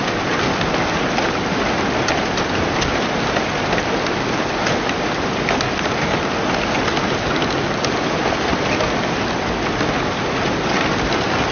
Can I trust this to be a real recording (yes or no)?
yes